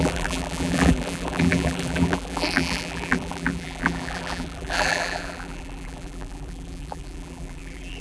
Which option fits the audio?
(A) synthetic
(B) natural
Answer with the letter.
A